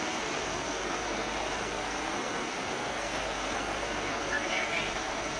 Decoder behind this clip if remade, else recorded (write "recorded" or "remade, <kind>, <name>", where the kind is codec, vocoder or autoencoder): remade, codec, SNAC